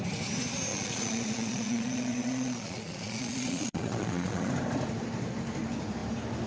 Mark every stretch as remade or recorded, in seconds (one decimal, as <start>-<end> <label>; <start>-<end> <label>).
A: 0.0-0.7 recorded; 0.7-4.5 remade; 4.5-6.5 recorded